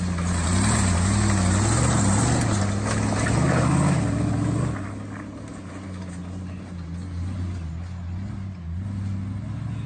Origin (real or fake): real